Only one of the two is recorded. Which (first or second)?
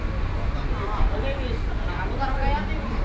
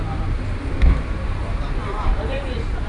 first